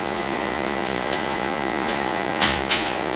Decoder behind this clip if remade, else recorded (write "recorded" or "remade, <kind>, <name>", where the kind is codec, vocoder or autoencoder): remade, vocoder, Vocos